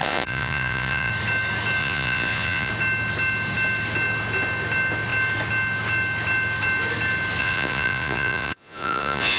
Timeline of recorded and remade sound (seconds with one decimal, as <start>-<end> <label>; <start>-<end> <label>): 0.0-1.1 remade; 1.1-1.8 recorded; 1.8-2.7 remade; 2.7-7.4 recorded; 7.4-9.4 remade